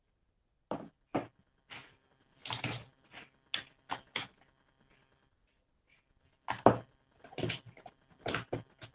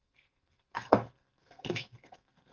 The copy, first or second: second